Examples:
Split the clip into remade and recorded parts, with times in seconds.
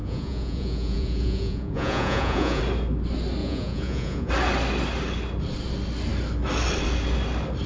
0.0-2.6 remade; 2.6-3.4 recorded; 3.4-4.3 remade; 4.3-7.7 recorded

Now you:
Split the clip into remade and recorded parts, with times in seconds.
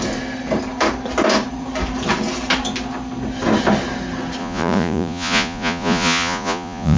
0.0-4.4 recorded; 4.4-7.0 remade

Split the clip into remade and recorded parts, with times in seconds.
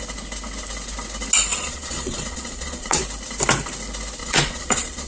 0.0-1.5 recorded; 1.5-3.0 remade; 3.0-4.2 recorded; 4.2-5.1 remade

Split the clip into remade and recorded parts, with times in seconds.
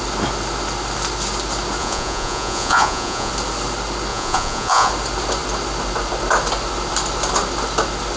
0.0-1.8 recorded; 1.8-3.3 remade; 3.3-4.1 recorded; 4.1-4.9 remade; 4.9-8.2 recorded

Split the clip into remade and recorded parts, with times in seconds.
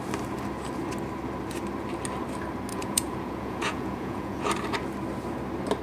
0.0-2.7 recorded; 2.7-4.4 remade; 4.4-5.8 recorded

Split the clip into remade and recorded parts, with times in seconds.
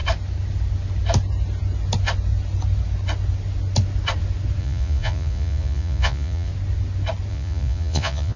0.0-4.6 recorded; 4.6-6.5 remade; 6.5-7.3 recorded; 7.3-8.4 remade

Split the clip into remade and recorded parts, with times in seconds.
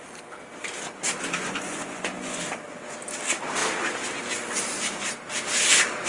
0.0-1.4 recorded; 1.4-2.4 remade; 2.4-6.1 recorded